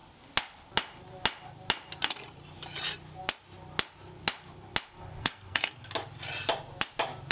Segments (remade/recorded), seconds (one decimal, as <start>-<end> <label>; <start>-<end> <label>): 0.0-5.2 recorded; 5.2-5.9 remade; 5.9-7.3 recorded